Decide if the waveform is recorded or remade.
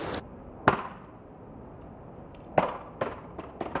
recorded